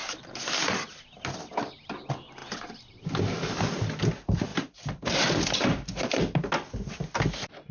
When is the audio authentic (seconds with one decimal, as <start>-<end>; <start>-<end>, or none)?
0.7-4.5; 6.5-7.7